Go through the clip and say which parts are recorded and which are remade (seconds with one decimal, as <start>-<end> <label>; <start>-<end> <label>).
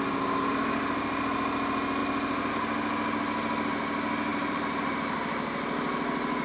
0.0-2.0 recorded; 2.0-2.5 remade; 2.5-4.3 recorded; 4.3-5.3 remade; 5.3-6.4 recorded